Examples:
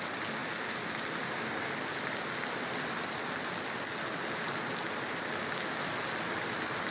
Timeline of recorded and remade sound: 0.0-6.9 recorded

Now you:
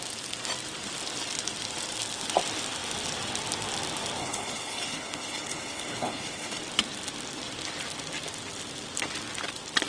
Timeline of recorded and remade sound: 0.0-4.2 recorded; 4.2-6.6 remade; 6.6-9.9 recorded

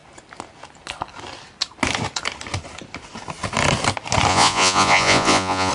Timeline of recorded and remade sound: 0.0-4.3 recorded; 4.3-5.7 remade

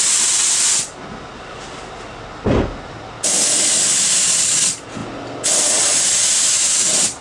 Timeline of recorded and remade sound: 0.0-7.2 recorded

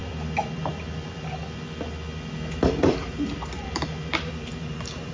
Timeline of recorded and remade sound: 0.0-1.4 remade; 1.4-2.5 recorded; 2.5-5.1 remade

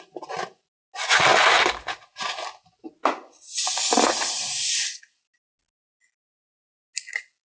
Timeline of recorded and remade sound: 0.0-7.5 recorded

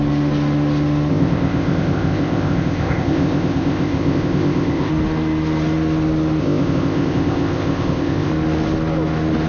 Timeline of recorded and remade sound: 0.0-1.1 recorded; 1.1-4.9 remade; 4.9-6.4 recorded; 6.4-8.3 remade; 8.3-9.5 recorded